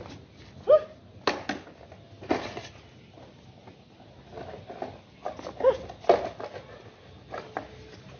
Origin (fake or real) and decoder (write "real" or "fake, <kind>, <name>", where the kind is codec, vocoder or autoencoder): real